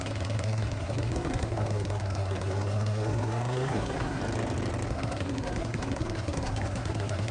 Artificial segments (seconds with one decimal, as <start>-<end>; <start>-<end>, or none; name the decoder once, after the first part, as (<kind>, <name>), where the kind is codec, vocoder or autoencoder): 0.0-4.2 (codec, SNAC); 4.9-7.3